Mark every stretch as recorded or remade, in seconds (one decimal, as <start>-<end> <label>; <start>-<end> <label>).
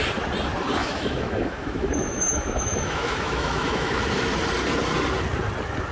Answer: 0.0-0.8 recorded; 0.8-4.0 remade; 4.0-5.9 recorded